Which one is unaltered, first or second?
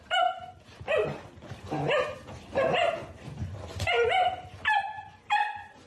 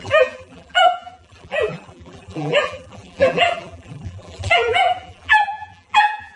first